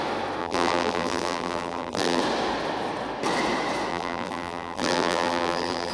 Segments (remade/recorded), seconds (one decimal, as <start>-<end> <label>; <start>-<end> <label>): 0.0-0.4 recorded; 0.4-2.2 remade; 2.2-3.9 recorded; 3.9-5.9 remade